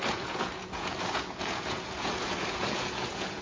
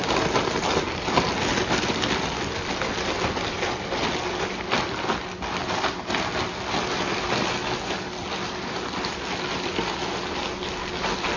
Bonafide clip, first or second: second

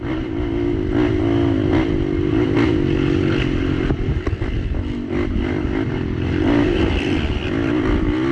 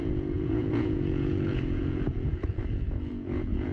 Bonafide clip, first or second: first